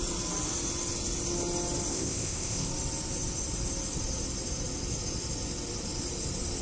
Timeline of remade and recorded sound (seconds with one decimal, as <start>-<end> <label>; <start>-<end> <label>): 0.0-1.9 recorded; 1.9-2.7 remade; 2.7-6.6 recorded